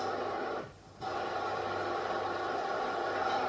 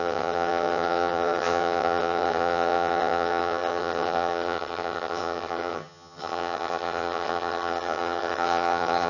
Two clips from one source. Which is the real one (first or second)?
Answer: first